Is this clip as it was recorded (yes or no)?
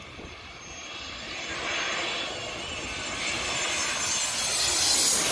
yes